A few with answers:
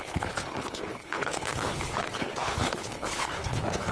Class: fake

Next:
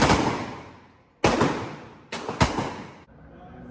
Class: real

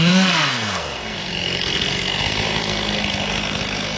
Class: fake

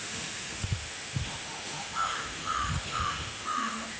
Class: fake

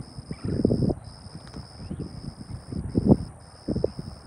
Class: real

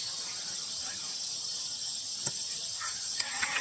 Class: fake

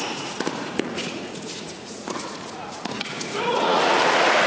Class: fake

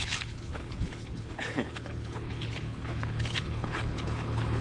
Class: fake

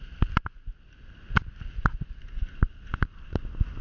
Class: real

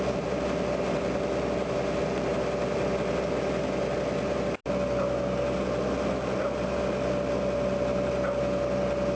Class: real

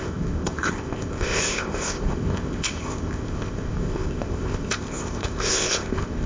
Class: fake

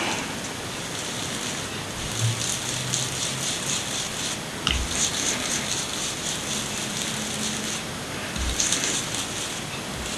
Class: real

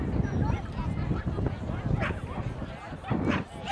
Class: real